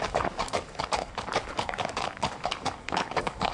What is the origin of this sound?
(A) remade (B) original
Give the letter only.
A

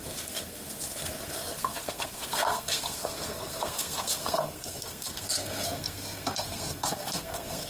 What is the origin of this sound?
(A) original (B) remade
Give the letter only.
B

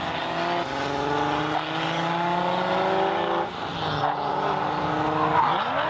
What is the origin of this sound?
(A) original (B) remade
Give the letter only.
A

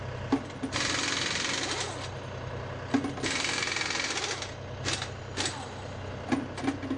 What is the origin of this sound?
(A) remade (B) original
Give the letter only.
B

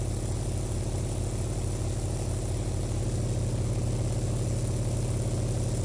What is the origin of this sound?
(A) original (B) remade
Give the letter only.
A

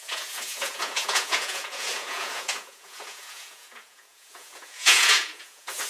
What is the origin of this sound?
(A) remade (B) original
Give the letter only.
A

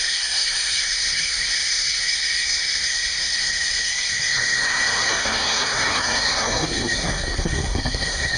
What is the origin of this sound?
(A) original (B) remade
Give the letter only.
B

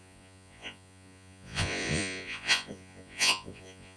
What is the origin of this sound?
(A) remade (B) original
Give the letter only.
A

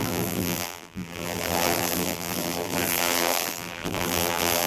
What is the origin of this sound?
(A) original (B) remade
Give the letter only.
B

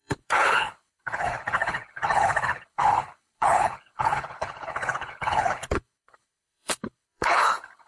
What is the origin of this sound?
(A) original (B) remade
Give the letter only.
B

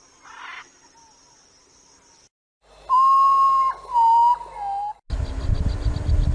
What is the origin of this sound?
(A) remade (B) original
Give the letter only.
B